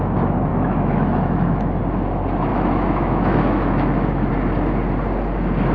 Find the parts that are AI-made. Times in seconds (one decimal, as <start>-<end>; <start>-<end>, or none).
0.5-1.8; 2.5-4.3